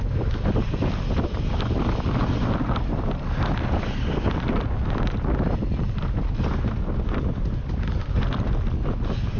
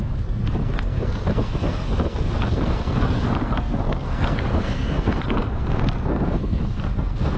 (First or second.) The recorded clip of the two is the first